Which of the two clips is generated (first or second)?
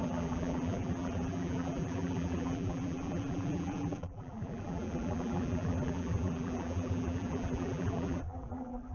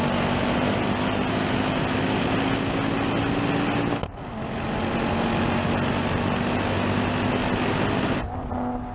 first